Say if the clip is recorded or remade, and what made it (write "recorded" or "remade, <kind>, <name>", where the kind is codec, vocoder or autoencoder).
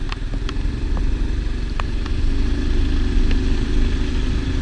recorded